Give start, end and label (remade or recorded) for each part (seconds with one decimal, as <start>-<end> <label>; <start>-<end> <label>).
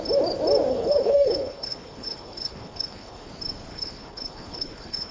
0.0-0.7 recorded; 0.7-3.3 remade; 3.3-3.7 recorded; 3.7-5.1 remade